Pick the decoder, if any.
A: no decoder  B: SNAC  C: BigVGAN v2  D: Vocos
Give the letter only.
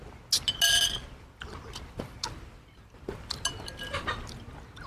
A